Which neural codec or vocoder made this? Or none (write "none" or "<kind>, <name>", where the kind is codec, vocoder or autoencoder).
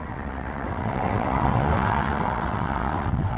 vocoder, WaveNeXt